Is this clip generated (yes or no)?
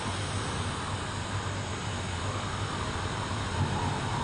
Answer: no